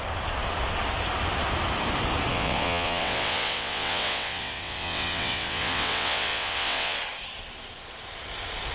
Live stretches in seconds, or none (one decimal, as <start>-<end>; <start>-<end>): 0.0-2.3; 7.0-8.7